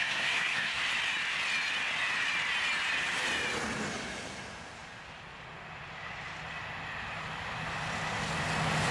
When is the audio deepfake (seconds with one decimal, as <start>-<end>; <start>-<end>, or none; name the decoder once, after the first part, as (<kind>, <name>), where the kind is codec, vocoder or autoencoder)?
0.0-0.8 (codec, SNAC)